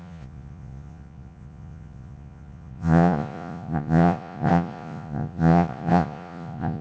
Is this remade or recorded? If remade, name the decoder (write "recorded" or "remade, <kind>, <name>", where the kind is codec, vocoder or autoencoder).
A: remade, vocoder, Vocos